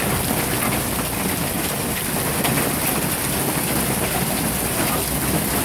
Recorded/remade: recorded